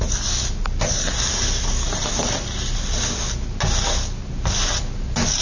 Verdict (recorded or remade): recorded